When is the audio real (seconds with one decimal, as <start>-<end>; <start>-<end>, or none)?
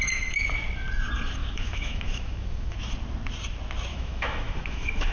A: 0.0-1.4; 2.8-3.9